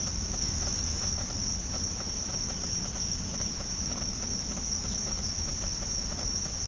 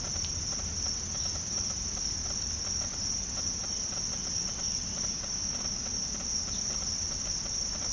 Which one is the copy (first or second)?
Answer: first